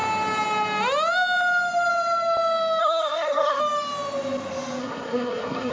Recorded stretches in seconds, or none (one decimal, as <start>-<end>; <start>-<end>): 0.0-2.8; 3.6-4.8